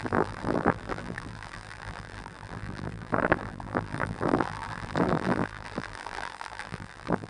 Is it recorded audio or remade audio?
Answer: remade